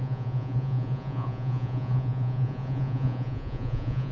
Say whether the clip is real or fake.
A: fake